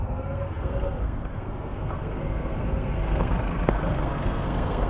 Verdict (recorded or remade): remade